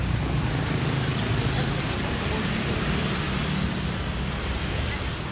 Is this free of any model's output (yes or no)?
yes